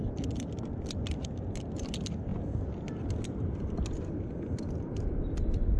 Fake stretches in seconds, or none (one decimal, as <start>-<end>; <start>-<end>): none